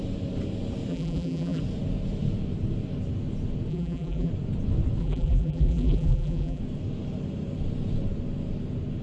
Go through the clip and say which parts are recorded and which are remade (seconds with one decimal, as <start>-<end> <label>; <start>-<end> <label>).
0.0-0.9 recorded; 0.9-1.6 remade; 1.6-3.7 recorded; 3.7-4.3 remade; 4.3-5.0 recorded; 5.0-6.6 remade; 6.6-9.0 recorded